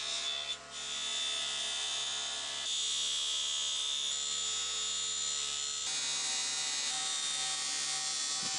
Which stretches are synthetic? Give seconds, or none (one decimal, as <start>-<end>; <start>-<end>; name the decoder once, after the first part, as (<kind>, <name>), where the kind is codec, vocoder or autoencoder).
none